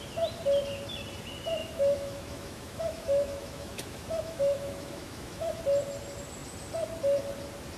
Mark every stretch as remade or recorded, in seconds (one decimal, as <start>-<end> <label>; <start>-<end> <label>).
0.0-1.6 recorded; 1.6-5.6 remade; 5.6-7.8 recorded